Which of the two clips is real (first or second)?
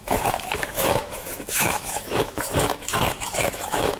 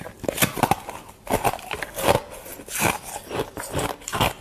second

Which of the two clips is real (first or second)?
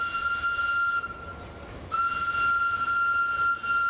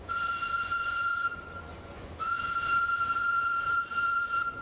first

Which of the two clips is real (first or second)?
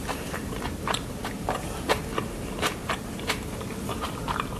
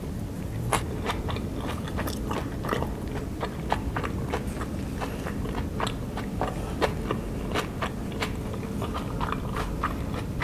second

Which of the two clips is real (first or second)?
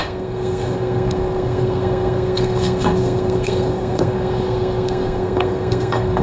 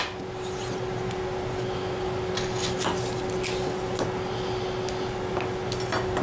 second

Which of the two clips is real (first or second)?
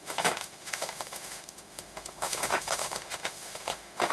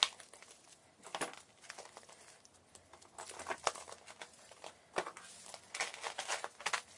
second